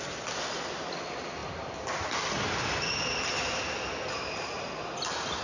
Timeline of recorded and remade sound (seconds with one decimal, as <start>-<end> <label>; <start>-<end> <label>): 0.0-5.4 recorded